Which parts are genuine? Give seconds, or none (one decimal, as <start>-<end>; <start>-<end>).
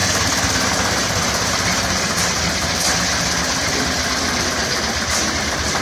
3.2-5.8